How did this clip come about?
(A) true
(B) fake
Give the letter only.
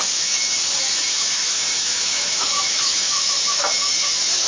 B